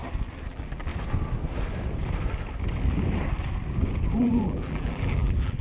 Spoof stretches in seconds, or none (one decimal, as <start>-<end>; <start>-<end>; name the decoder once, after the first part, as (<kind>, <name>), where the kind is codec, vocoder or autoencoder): 0.5-0.9 (vocoder, BigVGAN v2); 4.2-5.6